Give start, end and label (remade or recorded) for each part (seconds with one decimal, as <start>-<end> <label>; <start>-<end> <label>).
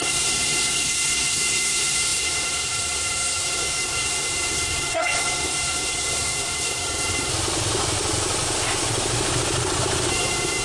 0.0-7.3 remade; 7.3-10.1 recorded; 10.1-10.6 remade